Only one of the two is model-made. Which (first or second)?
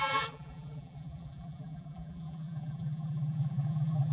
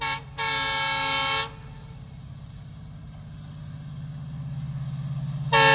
first